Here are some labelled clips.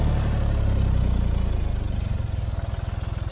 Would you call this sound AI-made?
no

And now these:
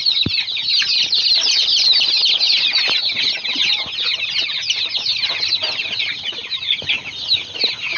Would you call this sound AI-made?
no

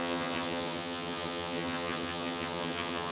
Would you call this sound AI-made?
yes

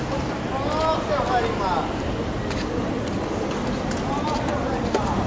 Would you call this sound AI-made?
no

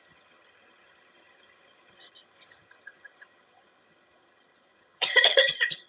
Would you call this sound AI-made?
yes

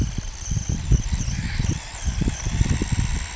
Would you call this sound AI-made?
no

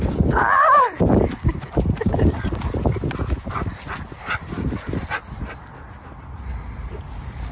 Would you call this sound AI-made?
no